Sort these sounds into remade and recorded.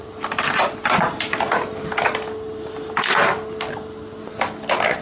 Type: recorded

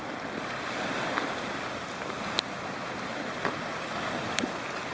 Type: recorded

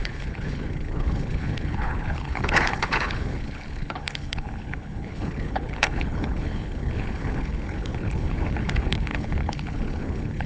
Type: remade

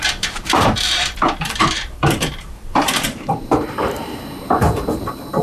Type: remade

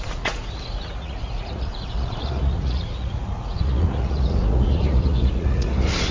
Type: remade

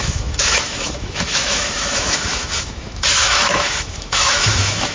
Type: remade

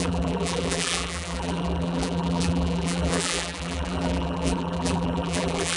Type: remade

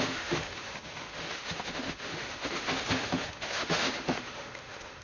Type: remade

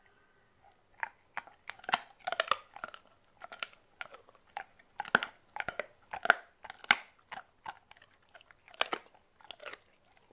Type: recorded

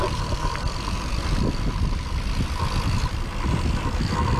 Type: recorded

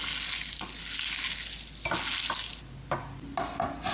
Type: recorded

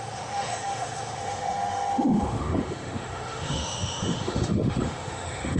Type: remade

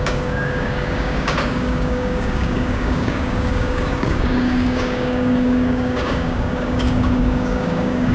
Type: remade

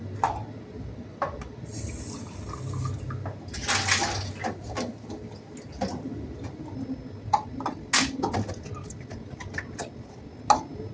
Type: recorded